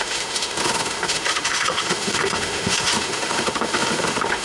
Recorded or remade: remade